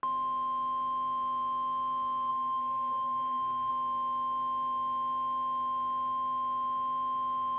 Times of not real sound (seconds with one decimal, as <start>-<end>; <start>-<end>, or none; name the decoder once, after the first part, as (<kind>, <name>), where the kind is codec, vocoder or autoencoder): 2.3-3.7 (codec, SNAC)